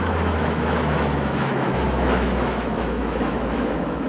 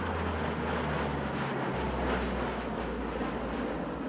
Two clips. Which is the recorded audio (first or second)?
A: second